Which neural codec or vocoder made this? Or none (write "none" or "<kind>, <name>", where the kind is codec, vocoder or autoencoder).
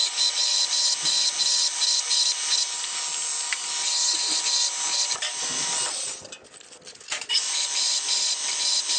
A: none